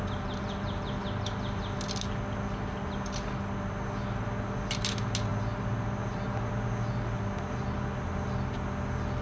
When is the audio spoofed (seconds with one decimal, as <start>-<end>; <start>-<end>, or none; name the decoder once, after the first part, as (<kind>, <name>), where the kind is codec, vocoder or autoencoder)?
none